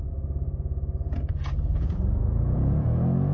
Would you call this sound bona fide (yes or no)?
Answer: no